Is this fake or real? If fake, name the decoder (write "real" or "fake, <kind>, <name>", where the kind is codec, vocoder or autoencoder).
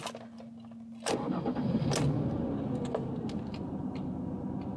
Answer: real